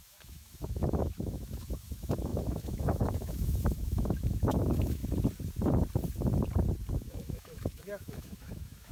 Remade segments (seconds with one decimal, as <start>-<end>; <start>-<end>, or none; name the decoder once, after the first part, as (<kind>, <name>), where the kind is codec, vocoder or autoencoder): 0.0-5.0 (autoencoder, DAC-VAE); 6.9-8.9